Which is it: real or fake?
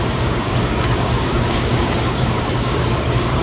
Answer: fake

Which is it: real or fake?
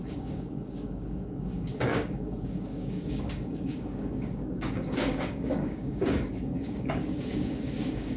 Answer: fake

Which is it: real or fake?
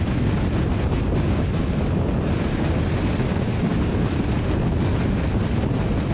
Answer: real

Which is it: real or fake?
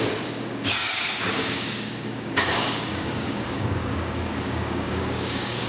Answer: fake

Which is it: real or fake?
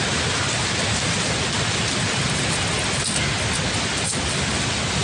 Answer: real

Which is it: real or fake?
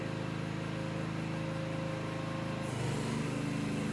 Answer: real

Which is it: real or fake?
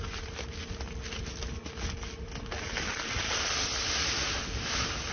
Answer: real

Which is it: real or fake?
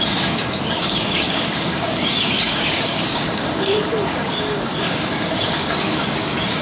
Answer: fake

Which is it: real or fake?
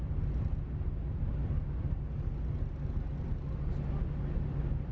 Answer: real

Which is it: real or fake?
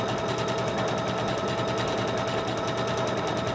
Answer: real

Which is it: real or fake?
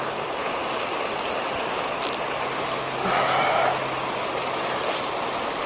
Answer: real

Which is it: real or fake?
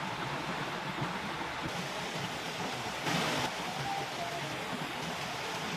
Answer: real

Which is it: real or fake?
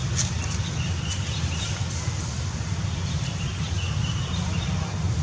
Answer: real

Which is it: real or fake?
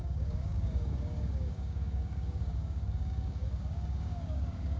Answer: fake